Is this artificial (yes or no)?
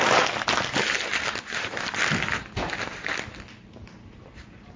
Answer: no